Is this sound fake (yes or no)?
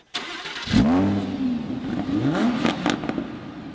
no